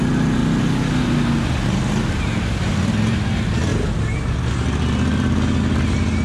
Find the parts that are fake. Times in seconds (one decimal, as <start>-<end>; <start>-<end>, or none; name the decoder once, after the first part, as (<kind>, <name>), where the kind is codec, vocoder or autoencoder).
none